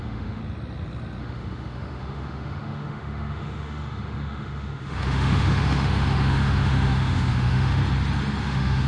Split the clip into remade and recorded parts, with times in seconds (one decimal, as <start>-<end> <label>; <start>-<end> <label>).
0.0-0.4 remade; 0.4-1.2 recorded; 1.2-7.8 remade; 7.8-8.4 recorded; 8.4-8.9 remade